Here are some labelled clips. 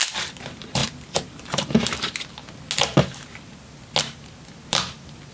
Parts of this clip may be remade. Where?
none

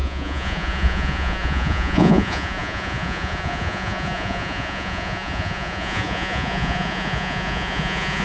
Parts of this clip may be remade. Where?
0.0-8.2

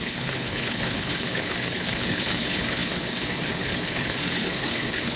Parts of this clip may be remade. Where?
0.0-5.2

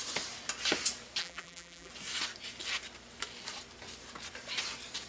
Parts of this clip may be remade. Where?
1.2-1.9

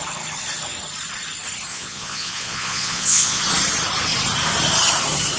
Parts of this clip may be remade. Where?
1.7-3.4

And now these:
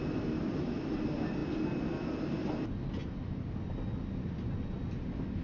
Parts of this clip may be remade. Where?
none

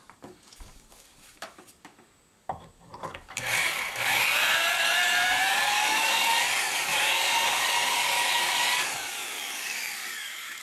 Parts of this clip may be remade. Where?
0.0-10.6

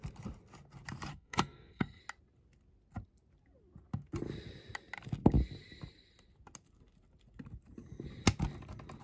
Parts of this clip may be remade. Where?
1.1-2.0